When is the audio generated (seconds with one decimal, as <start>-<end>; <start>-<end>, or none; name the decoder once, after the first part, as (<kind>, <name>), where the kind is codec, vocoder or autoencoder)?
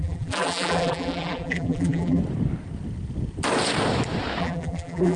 0.0-2.2 (vocoder, BigVGAN v2); 4.4-5.2